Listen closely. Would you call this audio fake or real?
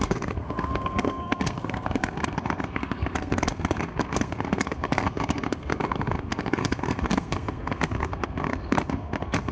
fake